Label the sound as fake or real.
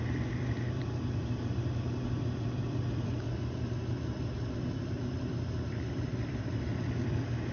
fake